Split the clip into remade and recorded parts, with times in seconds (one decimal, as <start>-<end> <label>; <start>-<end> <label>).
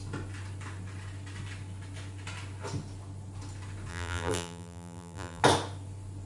0.0-3.9 recorded; 3.9-5.4 remade; 5.4-6.3 recorded